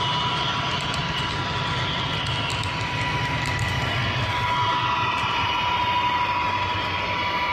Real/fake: real